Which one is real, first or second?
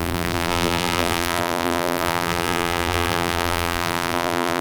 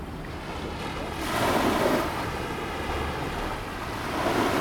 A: second